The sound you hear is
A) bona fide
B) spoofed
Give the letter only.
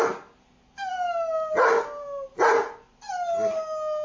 A